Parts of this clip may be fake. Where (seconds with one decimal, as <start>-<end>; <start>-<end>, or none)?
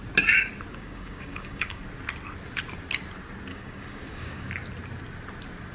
0.7-1.8; 3.5-4.5